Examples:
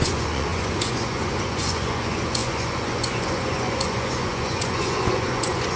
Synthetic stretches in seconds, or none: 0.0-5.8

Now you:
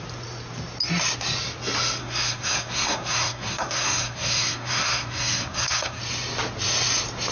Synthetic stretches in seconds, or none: 2.0-6.0

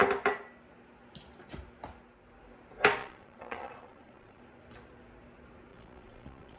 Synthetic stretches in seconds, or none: 3.0-4.4; 5.7-6.6

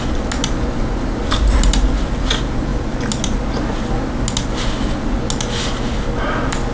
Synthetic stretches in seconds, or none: none